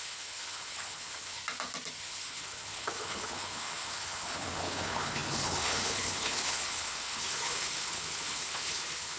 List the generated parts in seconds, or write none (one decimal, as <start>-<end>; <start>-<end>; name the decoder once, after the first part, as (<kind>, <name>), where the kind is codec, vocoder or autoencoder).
0.0-1.4 (codec, HILCodec); 2.0-9.2